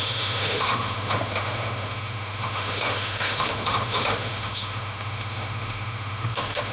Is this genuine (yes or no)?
no